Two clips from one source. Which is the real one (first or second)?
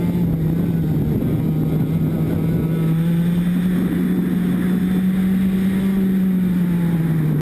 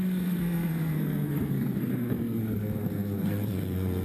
first